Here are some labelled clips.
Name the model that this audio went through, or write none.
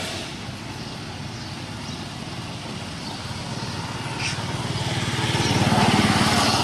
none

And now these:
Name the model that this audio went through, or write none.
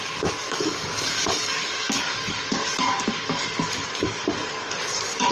codec, DAC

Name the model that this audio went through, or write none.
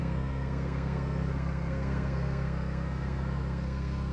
codec, SNAC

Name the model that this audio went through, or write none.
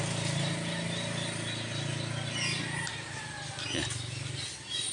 none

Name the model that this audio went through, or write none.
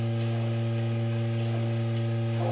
none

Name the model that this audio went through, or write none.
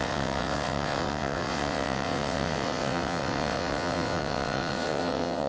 vocoder, WaveNeXt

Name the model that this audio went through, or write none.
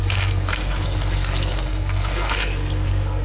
codec, SNAC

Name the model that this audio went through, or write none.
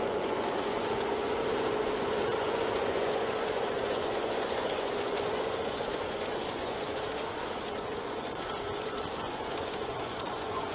vocoder, Vocos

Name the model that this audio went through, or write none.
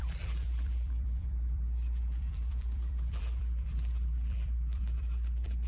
vocoder, BigVGAN v2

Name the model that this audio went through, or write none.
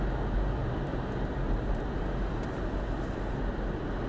none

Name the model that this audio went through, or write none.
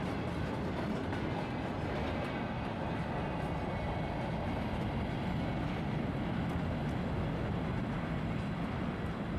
none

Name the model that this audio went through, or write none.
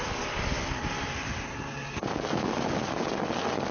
none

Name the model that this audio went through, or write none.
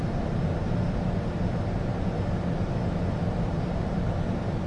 none